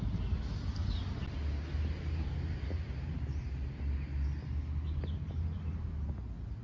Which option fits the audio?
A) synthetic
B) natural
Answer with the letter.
B